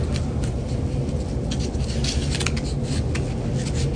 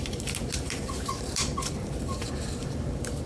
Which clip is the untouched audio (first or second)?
first